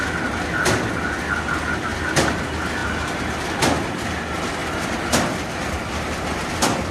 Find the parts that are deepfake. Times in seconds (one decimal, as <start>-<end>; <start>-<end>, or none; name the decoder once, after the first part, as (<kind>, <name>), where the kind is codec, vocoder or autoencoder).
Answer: 4.6-6.9 (vocoder, BigVGAN v2)